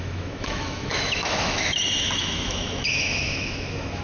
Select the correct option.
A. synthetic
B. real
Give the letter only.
A